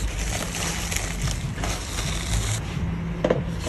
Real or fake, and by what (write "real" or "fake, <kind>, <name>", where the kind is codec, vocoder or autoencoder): real